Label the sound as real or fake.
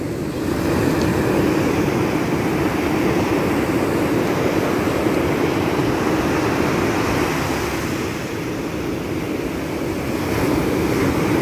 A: real